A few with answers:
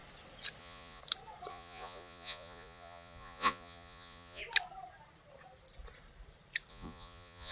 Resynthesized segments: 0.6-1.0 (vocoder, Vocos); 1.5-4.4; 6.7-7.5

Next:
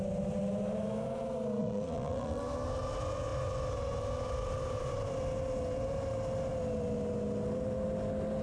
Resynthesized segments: 1.6-2.4 (vocoder, Vocos)